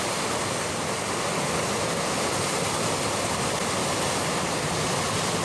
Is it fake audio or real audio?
real